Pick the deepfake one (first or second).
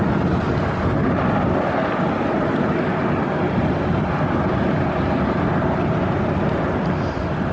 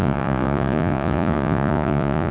second